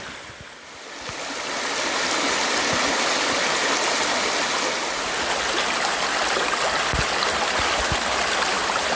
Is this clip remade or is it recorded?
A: recorded